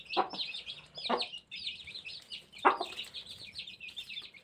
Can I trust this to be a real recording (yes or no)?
yes